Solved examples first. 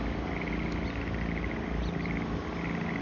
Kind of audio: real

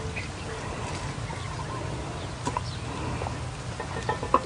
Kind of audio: real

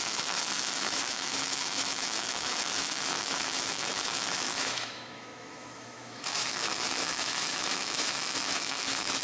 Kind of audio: fake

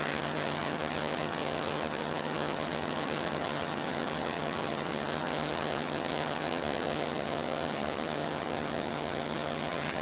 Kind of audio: fake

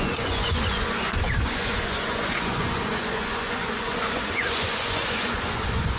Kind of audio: fake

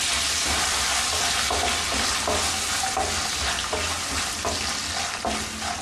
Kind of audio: real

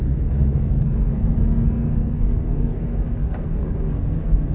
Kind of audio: fake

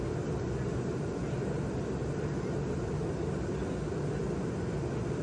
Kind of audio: real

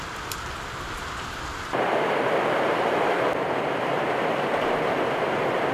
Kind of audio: real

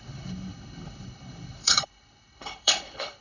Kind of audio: fake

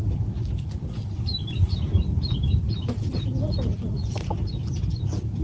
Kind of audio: real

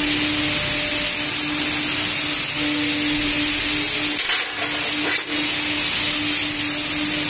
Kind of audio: real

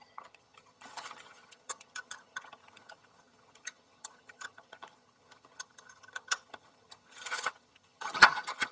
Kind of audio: fake